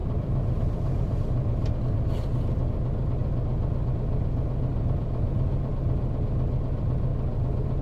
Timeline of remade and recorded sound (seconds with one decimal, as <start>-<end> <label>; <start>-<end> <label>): 0.0-1.8 remade; 1.8-4.7 recorded; 4.7-5.7 remade; 5.7-7.8 recorded